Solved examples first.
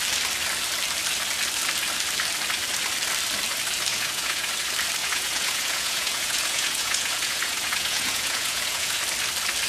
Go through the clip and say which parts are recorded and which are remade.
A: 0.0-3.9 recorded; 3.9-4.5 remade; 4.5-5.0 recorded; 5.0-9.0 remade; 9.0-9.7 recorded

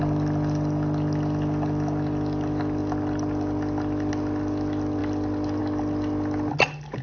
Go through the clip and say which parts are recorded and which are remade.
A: 0.0-7.0 recorded

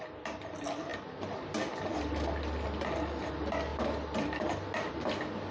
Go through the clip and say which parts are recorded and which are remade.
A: 0.0-5.5 recorded

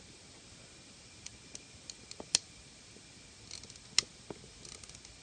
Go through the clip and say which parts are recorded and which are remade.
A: 0.0-5.2 recorded

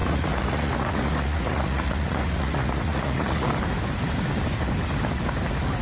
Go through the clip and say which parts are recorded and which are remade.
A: 0.0-3.5 remade; 3.5-5.8 recorded

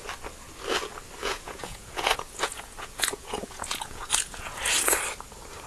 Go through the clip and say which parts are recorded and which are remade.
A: 0.0-1.2 recorded; 1.2-4.6 remade; 4.6-5.7 recorded

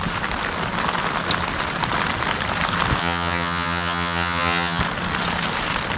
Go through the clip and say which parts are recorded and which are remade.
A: 0.0-3.0 recorded; 3.0-4.8 remade; 4.8-6.0 recorded